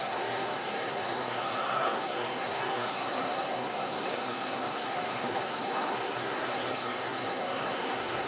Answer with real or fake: fake